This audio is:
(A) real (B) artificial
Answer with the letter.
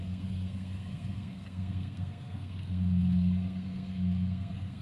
B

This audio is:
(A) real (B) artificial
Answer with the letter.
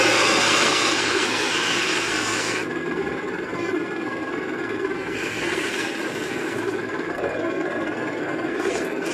B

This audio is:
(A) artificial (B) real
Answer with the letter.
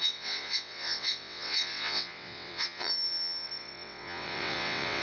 A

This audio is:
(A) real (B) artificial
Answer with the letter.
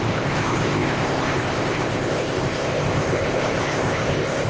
B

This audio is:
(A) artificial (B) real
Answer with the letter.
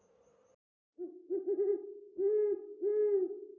B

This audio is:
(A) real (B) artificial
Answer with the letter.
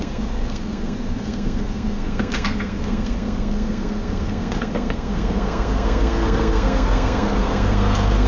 B